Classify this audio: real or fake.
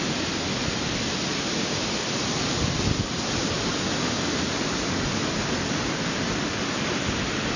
real